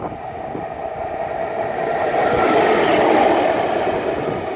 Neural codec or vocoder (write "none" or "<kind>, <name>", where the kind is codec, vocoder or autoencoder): none